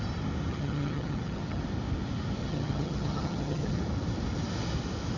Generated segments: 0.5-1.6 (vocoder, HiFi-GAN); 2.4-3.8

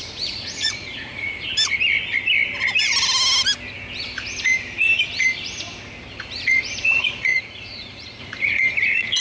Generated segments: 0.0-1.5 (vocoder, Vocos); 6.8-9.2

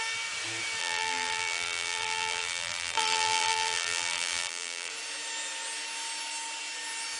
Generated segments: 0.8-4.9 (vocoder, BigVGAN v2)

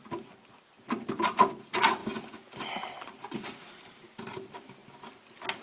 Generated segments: none

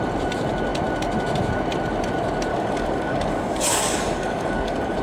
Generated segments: 2.5-5.0 (codec, DAC)

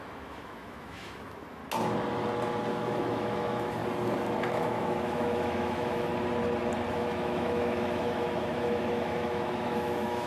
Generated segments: 0.0-1.6 (autoencoder, DAC-VAE); 2.7-3.8; 4.5-6.1; 6.9-10.3